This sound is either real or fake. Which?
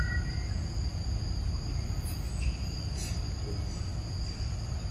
real